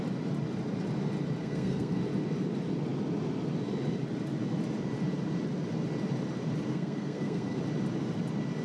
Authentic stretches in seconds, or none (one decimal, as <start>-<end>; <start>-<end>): 0.0-1.4; 2.0-6.7; 7.6-8.6